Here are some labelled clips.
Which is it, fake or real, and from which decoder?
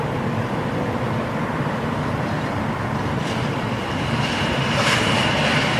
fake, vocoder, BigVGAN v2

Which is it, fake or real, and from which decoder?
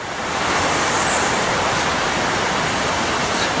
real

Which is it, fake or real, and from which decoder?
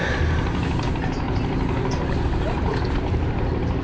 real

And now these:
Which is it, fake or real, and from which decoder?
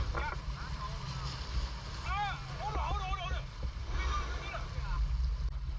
real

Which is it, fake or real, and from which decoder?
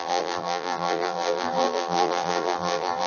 fake, vocoder, BigVGAN v2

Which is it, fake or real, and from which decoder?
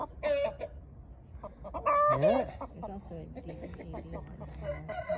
real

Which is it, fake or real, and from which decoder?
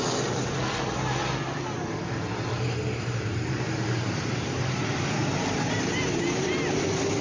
fake, vocoder, BigVGAN v2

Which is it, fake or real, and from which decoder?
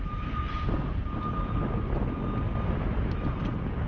real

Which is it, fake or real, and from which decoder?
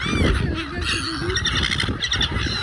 real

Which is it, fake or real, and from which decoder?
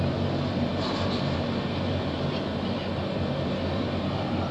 real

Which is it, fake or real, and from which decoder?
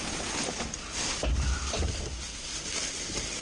real